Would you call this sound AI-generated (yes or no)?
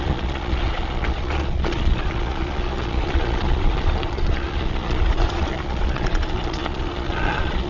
yes